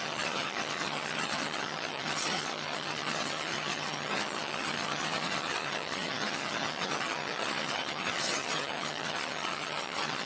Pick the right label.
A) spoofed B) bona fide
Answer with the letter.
A